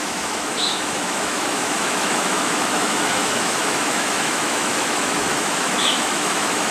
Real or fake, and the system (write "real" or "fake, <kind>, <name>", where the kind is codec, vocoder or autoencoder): fake, autoencoder, DAC-VAE